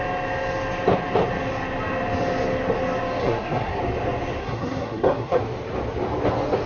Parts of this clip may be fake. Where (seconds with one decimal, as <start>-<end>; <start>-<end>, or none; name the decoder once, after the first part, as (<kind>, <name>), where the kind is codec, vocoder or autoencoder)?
3.2-3.8 (codec, SNAC); 4.4-5.4